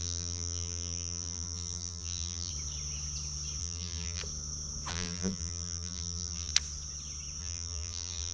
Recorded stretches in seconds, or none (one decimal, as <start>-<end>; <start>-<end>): 2.5-3.6; 4.2-4.9; 6.5-7.4